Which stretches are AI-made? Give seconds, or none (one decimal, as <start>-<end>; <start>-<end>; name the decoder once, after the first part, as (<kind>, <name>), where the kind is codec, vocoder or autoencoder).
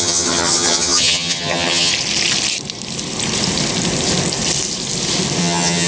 0.0-1.9 (vocoder, HiFi-GAN); 5.4-5.9